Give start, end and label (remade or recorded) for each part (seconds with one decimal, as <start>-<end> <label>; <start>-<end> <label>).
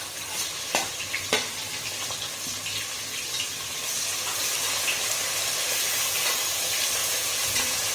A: 0.0-7.0 recorded; 7.0-7.9 remade